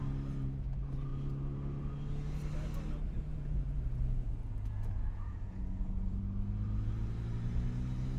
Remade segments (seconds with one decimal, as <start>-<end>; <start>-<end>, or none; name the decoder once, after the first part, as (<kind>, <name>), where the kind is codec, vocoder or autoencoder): 3.3-6.2 (vocoder, Vocos)